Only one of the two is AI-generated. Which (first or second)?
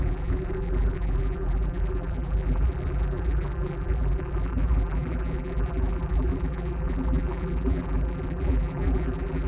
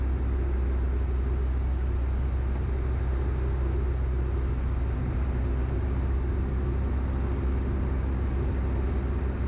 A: first